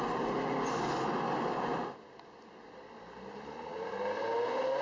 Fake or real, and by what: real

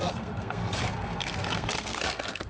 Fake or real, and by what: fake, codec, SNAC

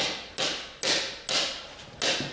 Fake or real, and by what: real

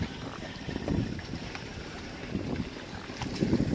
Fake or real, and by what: real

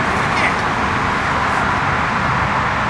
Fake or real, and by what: real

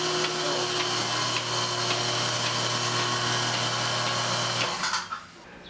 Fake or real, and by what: real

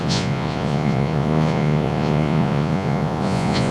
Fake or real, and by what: fake, vocoder, Vocos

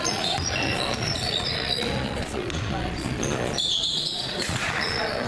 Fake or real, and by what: fake, vocoder, Vocos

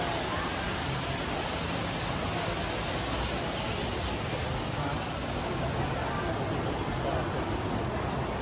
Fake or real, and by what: real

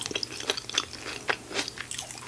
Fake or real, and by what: real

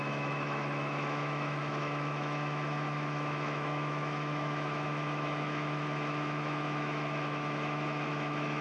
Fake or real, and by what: fake, autoencoder, DAC-VAE